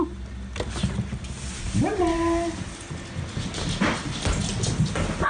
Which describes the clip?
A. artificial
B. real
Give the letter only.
B